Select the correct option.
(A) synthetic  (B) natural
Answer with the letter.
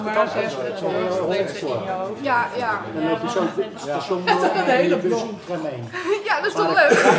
B